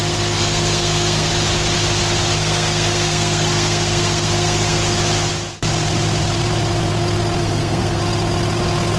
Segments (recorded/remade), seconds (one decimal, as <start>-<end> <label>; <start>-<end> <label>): 0.0-1.3 remade; 1.3-2.4 recorded; 2.4-4.8 remade; 4.8-7.4 recorded; 7.4-8.0 remade; 8.0-9.0 recorded